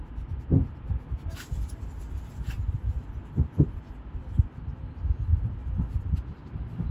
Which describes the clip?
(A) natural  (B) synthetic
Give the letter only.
A